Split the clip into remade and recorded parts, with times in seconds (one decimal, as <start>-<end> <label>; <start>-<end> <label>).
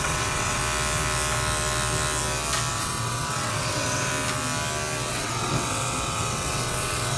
0.0-0.6 remade; 0.6-2.7 recorded; 2.7-4.1 remade; 4.1-5.1 recorded; 5.1-7.2 remade